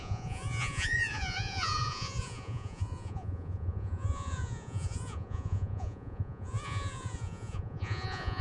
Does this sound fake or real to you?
fake